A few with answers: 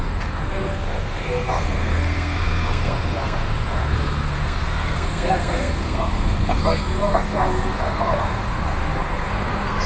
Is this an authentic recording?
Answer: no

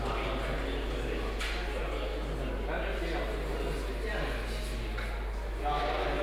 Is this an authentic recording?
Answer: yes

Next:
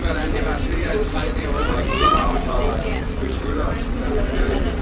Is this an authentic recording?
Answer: no